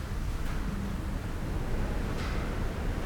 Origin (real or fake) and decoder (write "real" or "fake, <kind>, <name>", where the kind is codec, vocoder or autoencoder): real